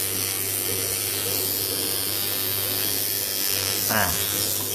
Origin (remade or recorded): recorded